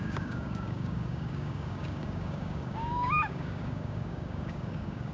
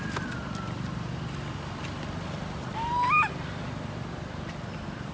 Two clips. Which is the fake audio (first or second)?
first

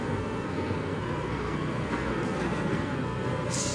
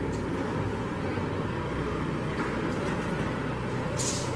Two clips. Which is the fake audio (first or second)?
first